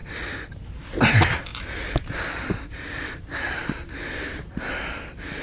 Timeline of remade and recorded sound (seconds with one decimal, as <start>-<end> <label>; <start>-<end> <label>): 0.0-1.5 recorded; 1.5-4.7 remade; 4.7-5.4 recorded